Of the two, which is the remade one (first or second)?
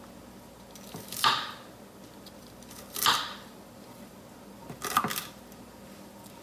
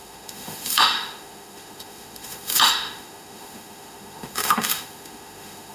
second